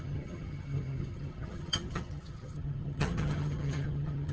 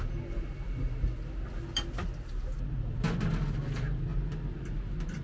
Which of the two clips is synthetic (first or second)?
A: first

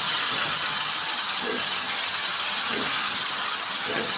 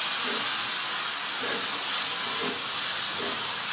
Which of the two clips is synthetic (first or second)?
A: first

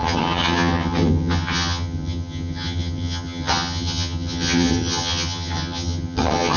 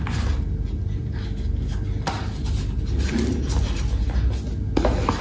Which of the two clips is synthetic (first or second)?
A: first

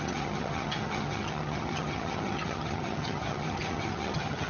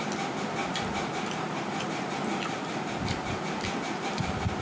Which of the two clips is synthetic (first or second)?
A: first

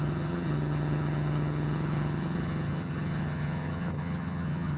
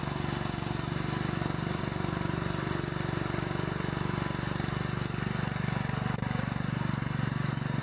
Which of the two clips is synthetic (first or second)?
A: first